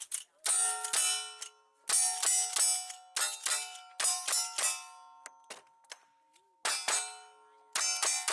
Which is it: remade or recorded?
recorded